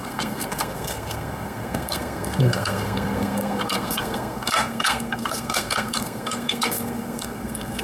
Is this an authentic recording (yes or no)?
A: no